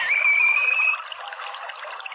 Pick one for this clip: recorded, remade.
recorded